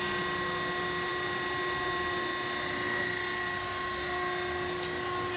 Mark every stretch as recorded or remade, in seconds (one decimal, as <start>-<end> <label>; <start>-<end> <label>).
0.0-5.4 recorded